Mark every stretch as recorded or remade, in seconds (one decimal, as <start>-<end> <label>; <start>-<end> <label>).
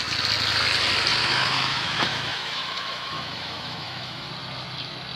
0.0-1.2 recorded; 1.2-4.3 remade; 4.3-5.2 recorded